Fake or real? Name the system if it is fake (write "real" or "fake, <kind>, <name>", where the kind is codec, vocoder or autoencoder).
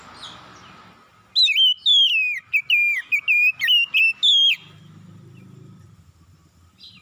real